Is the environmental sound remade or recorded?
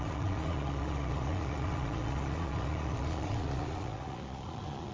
remade